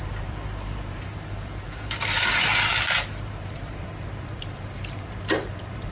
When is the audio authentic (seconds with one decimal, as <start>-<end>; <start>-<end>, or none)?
none